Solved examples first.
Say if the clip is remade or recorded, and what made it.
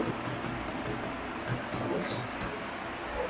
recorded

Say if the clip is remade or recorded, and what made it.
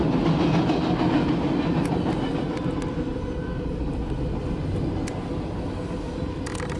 recorded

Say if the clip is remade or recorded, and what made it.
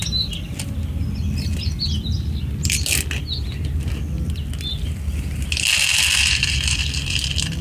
recorded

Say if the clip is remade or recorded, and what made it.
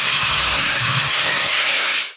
remade, codec, SNAC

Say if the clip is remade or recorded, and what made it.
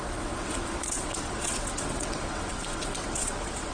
remade, vocoder, WaveNeXt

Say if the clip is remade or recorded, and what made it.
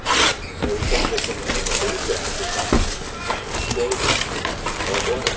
recorded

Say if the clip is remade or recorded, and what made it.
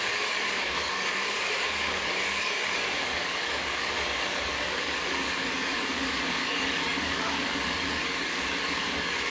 remade, codec, DAC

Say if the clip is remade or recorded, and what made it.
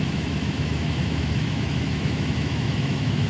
remade, autoencoder, DAC-VAE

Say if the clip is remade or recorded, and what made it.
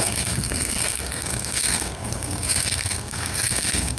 remade, codec, SNAC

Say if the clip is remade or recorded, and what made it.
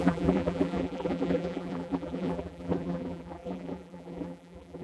remade, vocoder, BigVGAN v2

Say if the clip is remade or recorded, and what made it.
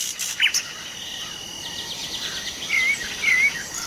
remade, vocoder, BigVGAN v2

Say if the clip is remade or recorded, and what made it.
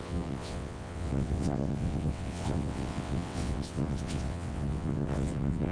remade, vocoder, WaveNeXt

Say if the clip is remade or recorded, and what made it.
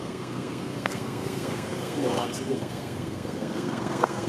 remade, codec, SNAC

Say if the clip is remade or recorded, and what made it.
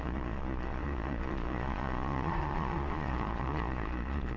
remade, vocoder, Vocos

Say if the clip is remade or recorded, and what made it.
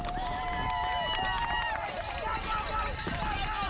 recorded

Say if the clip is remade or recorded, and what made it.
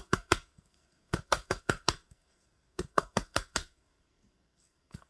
remade, codec, SNAC